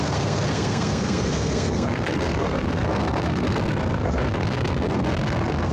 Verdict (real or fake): fake